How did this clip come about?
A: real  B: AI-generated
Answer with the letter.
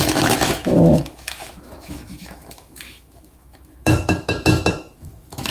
B